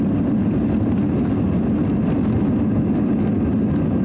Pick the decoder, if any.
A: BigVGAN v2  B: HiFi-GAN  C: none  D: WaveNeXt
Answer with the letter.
C